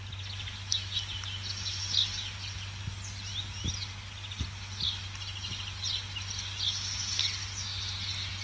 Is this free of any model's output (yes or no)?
yes